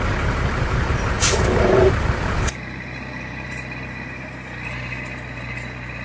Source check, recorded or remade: remade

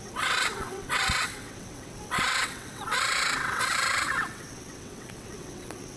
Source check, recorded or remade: remade